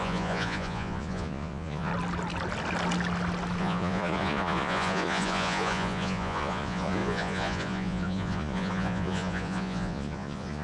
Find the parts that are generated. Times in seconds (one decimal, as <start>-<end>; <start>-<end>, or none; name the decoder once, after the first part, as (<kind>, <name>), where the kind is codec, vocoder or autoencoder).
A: 0.0-1.9 (vocoder, Vocos); 3.6-10.6